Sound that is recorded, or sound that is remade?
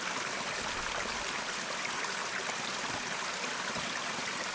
recorded